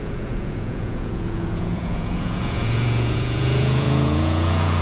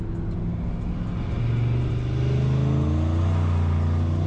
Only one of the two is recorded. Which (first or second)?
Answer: second